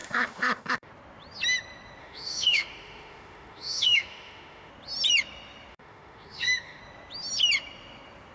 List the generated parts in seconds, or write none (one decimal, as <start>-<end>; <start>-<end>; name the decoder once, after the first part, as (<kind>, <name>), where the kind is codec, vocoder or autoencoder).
0.0-0.9 (autoencoder, DAC-VAE); 2.0-4.7; 5.7-6.8